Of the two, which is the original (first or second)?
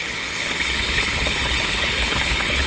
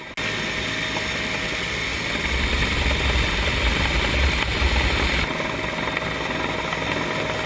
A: second